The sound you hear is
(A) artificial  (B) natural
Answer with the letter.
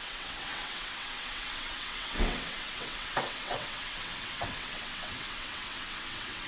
A